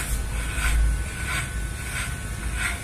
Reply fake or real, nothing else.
real